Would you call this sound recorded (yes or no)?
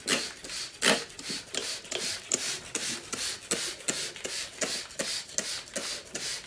yes